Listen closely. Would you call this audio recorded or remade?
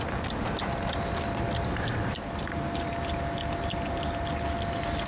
recorded